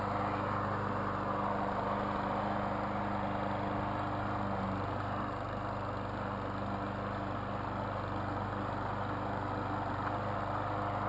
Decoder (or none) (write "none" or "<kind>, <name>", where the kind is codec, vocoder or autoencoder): none